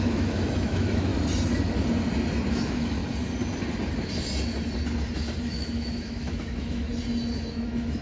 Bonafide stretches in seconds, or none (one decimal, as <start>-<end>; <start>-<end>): 1.1-2.5; 3.0-5.4; 6.9-7.5